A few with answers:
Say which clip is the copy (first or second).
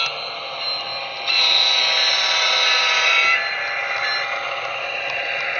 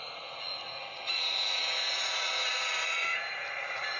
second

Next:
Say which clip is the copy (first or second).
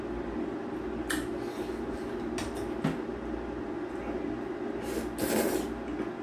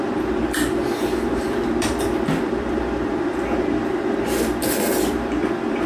second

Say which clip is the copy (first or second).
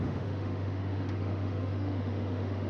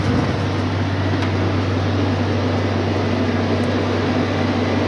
first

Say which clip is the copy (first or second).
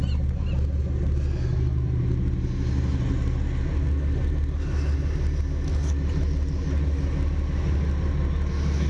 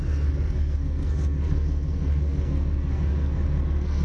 second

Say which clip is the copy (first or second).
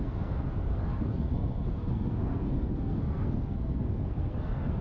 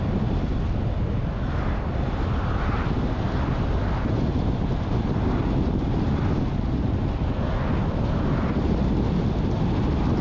first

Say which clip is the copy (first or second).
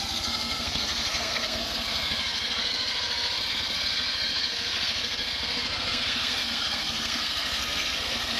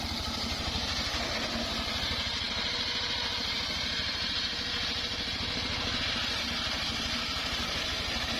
first